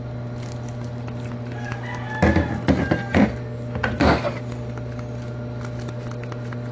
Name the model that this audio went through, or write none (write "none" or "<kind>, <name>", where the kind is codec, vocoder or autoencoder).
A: none